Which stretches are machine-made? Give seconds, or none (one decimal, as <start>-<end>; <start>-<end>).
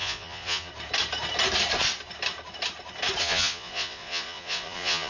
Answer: 0.0-0.7; 3.2-5.1